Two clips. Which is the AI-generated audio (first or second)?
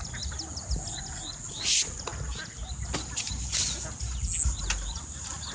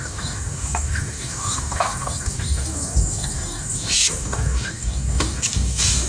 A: second